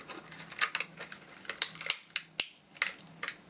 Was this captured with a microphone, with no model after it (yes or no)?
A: yes